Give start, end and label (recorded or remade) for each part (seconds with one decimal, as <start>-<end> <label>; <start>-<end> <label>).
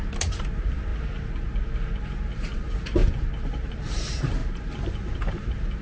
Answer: 0.0-0.9 remade; 0.9-2.0 recorded; 2.0-3.0 remade; 3.0-3.7 recorded; 3.7-4.4 remade; 4.4-5.3 recorded; 5.3-5.8 remade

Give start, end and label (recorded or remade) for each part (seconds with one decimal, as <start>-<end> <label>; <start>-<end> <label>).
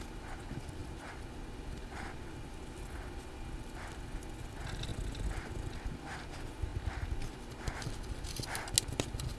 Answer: 0.0-9.4 recorded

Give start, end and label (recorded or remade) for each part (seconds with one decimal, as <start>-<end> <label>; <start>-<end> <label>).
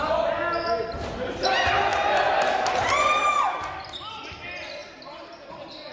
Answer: 0.0-5.9 recorded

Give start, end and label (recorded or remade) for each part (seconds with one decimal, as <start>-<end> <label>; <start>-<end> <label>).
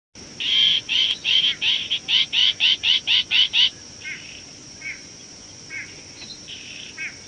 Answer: 0.0-0.6 recorded; 0.6-1.4 remade; 1.4-2.4 recorded; 2.4-3.5 remade; 3.5-4.6 recorded; 4.6-6.3 remade; 6.3-7.3 recorded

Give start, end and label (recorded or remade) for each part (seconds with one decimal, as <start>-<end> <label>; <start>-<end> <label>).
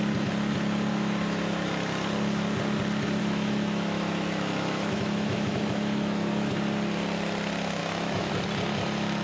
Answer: 0.0-0.9 recorded; 0.9-1.7 remade; 1.7-3.2 recorded; 3.2-6.5 remade; 6.5-7.8 recorded; 7.8-8.3 remade; 8.3-9.2 recorded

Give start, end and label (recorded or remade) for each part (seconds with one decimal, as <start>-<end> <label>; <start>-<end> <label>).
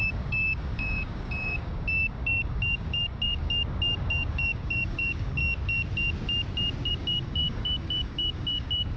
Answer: 0.0-5.4 remade; 5.4-6.9 recorded; 6.9-9.0 remade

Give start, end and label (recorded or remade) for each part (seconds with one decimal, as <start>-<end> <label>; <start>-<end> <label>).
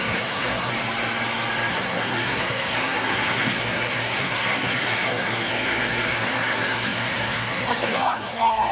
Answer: 0.0-0.7 remade; 0.7-1.7 recorded; 1.7-8.7 remade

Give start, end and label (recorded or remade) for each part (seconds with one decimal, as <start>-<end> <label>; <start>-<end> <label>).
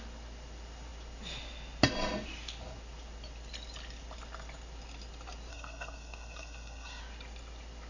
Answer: 0.0-5.5 recorded; 5.5-7.0 remade; 7.0-7.9 recorded